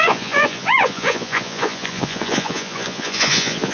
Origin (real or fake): fake